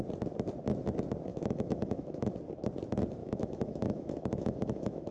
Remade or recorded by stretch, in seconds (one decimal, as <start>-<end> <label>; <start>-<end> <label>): 0.0-1.3 recorded; 1.3-2.3 remade; 2.3-3.2 recorded; 3.2-5.1 remade